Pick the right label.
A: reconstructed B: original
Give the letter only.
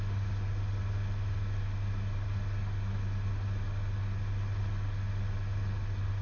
B